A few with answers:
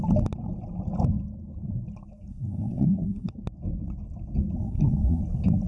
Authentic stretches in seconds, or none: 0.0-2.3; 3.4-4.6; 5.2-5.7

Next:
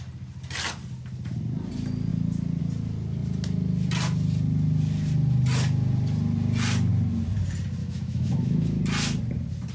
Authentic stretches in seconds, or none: 0.0-7.8; 8.8-9.7

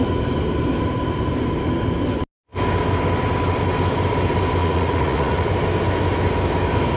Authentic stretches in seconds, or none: 0.0-4.6; 5.5-7.0

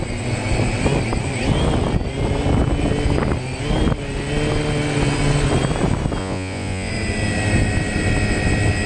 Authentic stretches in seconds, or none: 0.0-6.2; 6.9-8.9

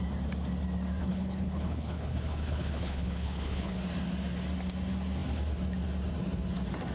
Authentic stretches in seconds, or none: 0.0-1.0; 3.7-6.9